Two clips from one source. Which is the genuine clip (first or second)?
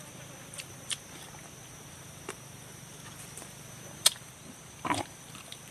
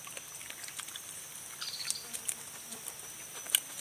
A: second